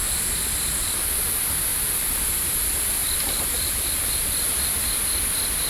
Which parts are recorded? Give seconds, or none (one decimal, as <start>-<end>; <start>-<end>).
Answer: 0.0-3.0; 4.1-5.7